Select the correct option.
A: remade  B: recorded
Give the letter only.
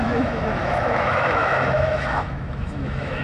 A